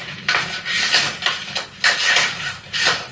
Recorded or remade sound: recorded